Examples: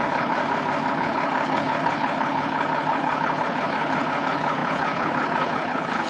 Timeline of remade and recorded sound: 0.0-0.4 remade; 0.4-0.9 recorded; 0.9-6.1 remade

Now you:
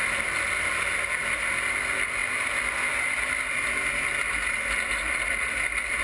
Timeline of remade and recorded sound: 0.0-6.0 recorded

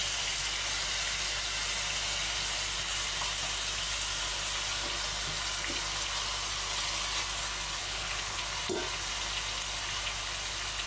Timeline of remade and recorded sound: 0.0-7.8 recorded; 7.8-8.4 remade; 8.4-10.9 recorded

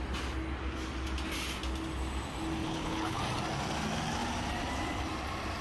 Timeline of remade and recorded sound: 0.0-2.6 recorded; 2.6-3.2 remade; 3.2-5.6 recorded